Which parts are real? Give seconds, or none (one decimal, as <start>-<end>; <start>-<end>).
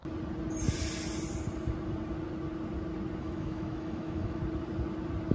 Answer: 0.0-3.2; 4.4-5.3